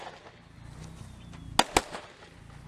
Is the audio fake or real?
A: real